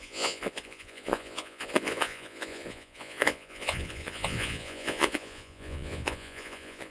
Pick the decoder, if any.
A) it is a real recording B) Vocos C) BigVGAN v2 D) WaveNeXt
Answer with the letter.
B